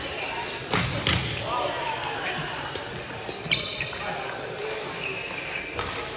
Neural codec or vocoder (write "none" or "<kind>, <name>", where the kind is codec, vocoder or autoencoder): none